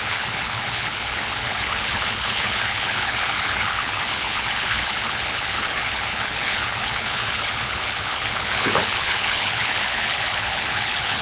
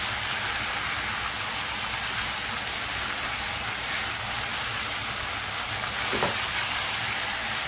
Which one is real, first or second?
second